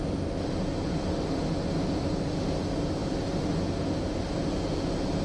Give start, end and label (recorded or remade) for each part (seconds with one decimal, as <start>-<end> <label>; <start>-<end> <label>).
0.0-5.2 recorded